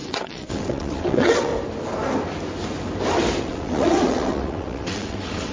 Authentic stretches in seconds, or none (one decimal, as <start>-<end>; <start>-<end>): 1.5-3.4